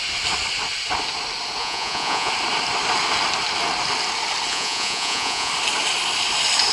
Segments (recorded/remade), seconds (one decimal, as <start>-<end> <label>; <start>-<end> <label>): 0.0-1.6 recorded; 1.6-2.3 remade; 2.3-4.5 recorded; 4.5-5.5 remade; 5.5-6.7 recorded